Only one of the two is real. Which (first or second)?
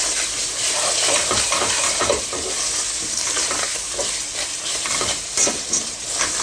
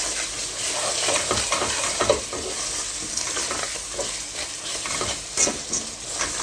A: second